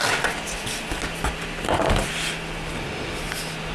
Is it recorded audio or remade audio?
recorded